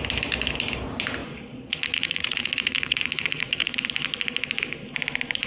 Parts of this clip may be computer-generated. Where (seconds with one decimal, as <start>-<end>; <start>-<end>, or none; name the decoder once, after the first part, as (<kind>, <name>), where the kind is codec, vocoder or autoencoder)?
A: 1.2-3.7 (vocoder, Vocos)